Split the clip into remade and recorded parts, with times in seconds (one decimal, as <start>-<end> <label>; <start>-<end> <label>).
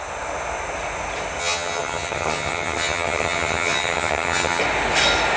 0.0-1.4 recorded; 1.4-4.6 remade; 4.6-5.4 recorded